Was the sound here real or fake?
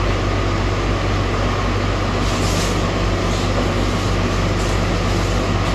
real